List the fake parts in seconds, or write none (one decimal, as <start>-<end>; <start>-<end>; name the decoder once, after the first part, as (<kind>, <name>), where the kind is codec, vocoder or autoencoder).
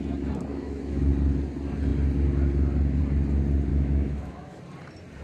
0.5-1.1 (autoencoder, DAC-VAE); 3.7-4.6